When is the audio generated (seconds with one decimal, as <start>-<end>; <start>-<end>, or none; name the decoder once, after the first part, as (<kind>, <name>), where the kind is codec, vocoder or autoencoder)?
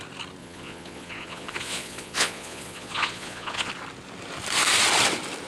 0.4-3.7 (vocoder, Vocos)